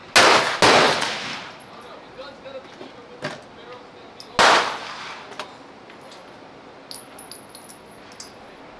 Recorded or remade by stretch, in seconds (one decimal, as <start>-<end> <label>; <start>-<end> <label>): 0.0-8.8 recorded